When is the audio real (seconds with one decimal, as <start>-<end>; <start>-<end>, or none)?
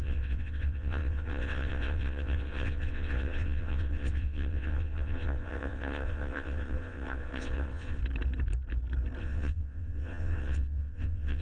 8.0-9.2